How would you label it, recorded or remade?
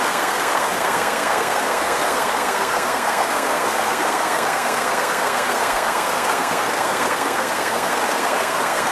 remade